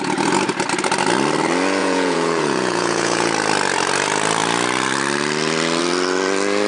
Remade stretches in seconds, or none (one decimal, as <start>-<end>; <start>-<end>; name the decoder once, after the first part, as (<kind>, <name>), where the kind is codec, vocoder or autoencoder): 1.8-3.3 (vocoder, Vocos)